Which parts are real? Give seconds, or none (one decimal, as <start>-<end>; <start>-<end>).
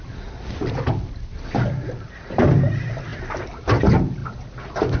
0.0-5.0